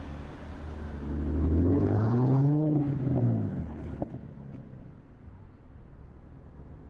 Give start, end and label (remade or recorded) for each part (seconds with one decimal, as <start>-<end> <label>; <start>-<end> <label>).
0.0-1.4 recorded; 1.4-3.0 remade; 3.0-3.5 recorded; 3.5-4.1 remade; 4.1-6.9 recorded